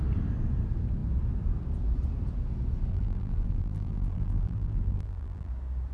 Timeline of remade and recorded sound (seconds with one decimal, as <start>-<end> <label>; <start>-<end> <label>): 0.0-2.9 recorded; 2.9-5.5 remade; 5.5-5.9 recorded